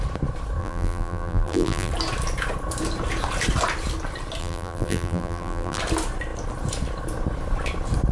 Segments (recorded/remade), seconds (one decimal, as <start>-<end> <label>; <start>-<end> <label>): 0.0-0.6 recorded; 0.6-1.9 remade; 1.9-4.4 recorded; 4.4-5.8 remade; 5.8-8.1 recorded